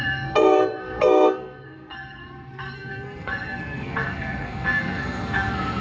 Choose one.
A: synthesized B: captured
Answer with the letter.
A